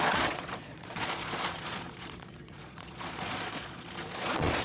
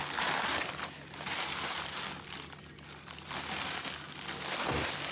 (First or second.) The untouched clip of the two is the second